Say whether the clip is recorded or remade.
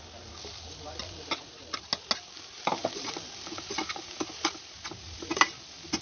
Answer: recorded